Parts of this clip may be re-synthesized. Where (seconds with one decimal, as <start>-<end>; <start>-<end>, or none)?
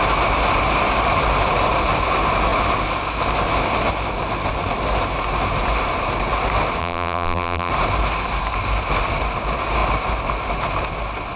6.8-7.7